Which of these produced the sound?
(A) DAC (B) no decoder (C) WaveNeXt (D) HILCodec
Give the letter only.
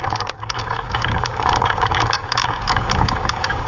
A